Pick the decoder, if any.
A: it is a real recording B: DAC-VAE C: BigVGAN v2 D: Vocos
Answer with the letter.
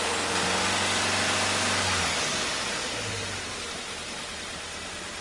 A